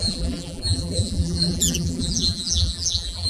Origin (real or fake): fake